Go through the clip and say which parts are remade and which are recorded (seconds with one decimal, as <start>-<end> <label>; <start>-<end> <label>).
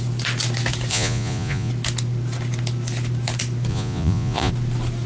0.0-0.9 recorded; 0.9-1.7 remade; 1.7-3.7 recorded; 3.7-4.5 remade; 4.5-5.1 recorded